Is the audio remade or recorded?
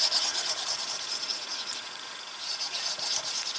remade